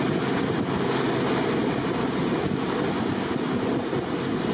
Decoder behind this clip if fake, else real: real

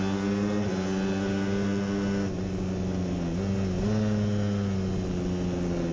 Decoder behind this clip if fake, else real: real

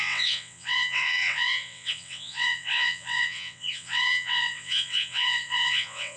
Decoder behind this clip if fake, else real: fake, vocoder, WaveNeXt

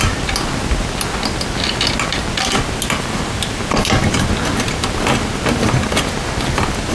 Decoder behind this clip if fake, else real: real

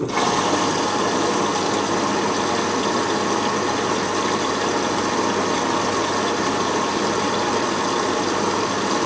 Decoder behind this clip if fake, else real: real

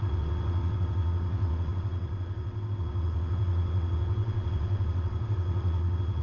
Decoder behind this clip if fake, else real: fake, vocoder, WaveNeXt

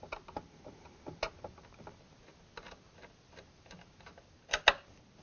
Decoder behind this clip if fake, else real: real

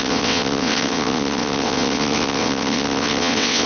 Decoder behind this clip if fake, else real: fake, vocoder, WaveNeXt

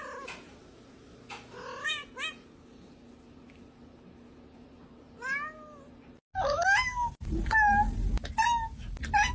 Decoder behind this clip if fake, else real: real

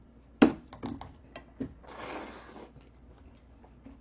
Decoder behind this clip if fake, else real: real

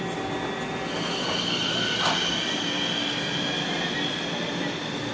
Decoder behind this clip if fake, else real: real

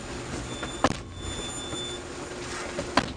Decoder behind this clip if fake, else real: real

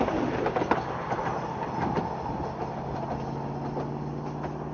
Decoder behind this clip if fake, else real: real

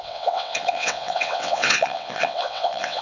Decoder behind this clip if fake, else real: fake, vocoder, WaveNeXt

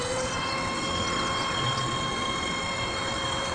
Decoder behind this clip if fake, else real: fake, vocoder, WaveNeXt